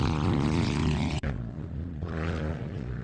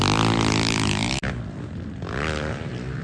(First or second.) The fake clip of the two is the first